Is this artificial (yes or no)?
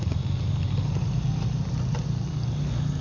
no